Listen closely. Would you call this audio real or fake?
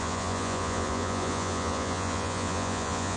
fake